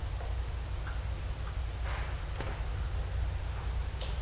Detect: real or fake real